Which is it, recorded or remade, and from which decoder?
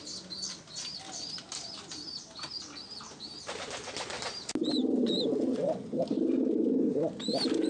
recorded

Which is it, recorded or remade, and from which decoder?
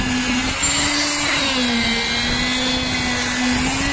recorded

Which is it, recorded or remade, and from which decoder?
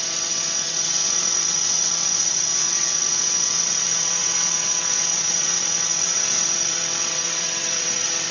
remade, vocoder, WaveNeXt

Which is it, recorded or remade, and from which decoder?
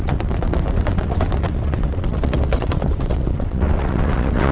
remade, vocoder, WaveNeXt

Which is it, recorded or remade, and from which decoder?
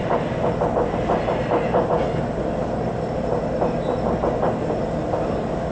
recorded